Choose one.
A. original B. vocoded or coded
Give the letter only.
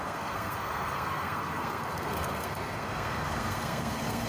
B